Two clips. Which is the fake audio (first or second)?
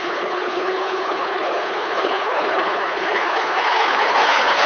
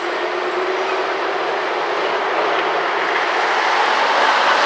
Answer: first